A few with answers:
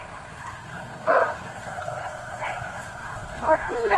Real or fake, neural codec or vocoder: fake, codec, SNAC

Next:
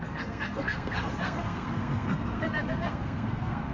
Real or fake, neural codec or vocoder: fake, codec, SNAC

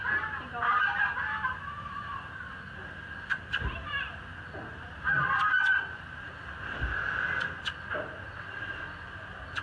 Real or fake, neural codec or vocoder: fake, vocoder, BigVGAN v2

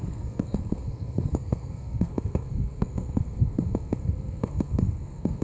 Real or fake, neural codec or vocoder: fake, codec, SNAC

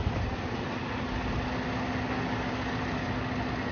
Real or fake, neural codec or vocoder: real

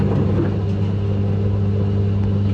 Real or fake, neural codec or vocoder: real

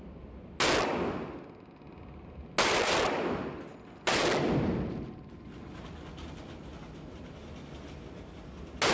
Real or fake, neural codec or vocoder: real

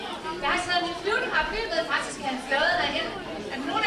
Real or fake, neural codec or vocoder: real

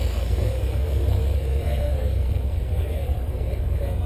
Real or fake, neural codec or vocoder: fake, codec, SNAC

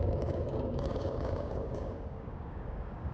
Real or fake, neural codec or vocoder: fake, codec, DAC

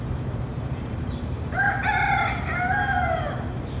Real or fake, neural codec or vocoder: fake, vocoder, BigVGAN v2